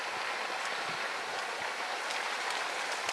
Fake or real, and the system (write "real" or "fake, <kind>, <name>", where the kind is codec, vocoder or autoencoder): real